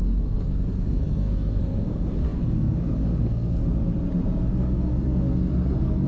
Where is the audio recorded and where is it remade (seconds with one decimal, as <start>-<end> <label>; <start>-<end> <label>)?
0.0-3.6 remade; 3.6-4.5 recorded; 4.5-6.1 remade